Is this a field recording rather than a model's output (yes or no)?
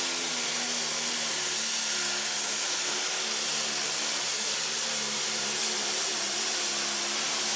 yes